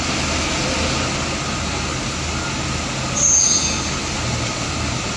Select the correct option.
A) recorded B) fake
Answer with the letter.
A